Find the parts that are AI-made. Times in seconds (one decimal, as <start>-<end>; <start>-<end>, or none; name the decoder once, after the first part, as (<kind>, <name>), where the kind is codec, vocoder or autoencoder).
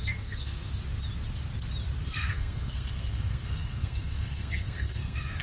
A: 0.0-0.7 (codec, SNAC); 2.0-5.4